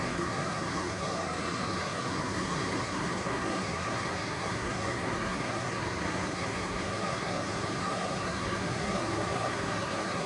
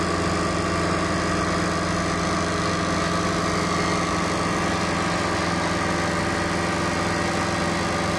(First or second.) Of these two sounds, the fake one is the first